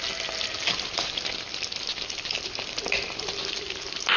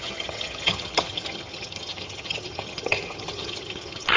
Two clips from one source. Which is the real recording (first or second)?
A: first